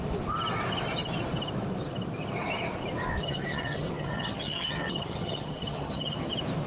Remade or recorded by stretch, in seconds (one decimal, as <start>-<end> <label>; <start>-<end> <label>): 0.0-3.2 recorded; 3.2-6.3 remade; 6.3-6.7 recorded